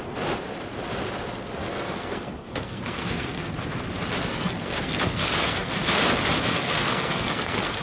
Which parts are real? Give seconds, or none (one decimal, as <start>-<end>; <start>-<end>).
0.0-1.7; 3.5-4.3; 5.7-6.5